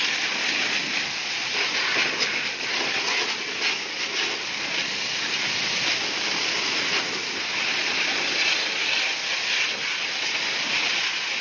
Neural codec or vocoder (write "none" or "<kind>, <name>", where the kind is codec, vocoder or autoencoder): none